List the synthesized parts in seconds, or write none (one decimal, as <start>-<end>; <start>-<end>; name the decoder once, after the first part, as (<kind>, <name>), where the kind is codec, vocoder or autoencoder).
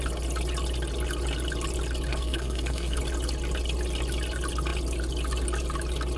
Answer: 2.1-3.0 (codec, SNAC)